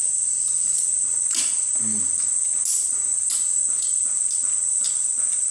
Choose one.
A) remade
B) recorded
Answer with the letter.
B